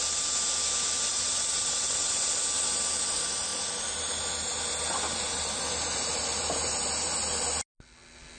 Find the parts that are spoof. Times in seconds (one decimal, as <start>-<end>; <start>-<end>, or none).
1.1-2.4